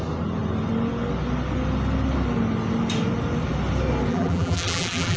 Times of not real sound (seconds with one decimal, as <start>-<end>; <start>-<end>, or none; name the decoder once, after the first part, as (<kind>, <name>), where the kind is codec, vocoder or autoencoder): 4.1-5.2 (vocoder, BigVGAN v2)